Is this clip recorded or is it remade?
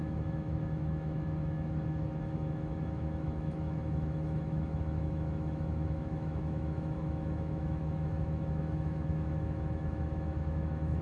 remade